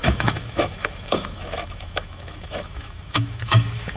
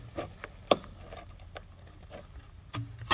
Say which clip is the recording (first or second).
second